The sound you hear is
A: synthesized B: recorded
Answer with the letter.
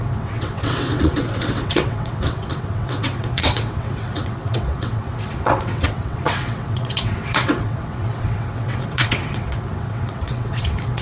A